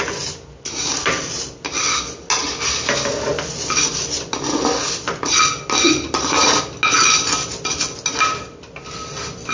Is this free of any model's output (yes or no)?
yes